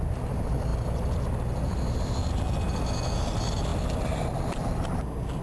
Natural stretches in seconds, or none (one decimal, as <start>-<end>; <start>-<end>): 0.0-3.7; 4.8-5.4